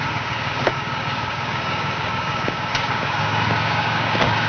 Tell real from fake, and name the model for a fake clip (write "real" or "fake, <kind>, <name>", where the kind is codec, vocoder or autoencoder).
fake, codec, DAC